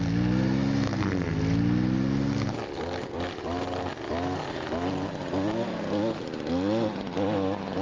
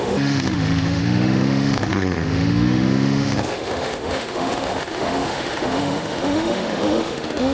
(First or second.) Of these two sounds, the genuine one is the first